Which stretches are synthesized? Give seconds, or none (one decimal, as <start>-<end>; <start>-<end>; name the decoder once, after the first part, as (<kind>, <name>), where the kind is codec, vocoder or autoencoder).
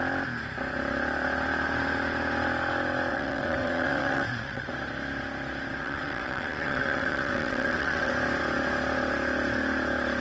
3.1-4.7 (vocoder, WaveNeXt); 5.8-8.1